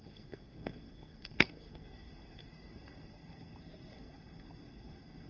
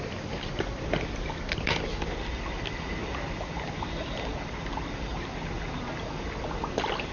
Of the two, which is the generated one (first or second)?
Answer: first